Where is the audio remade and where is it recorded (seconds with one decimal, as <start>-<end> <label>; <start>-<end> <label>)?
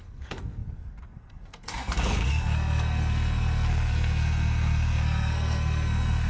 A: 0.0-6.3 remade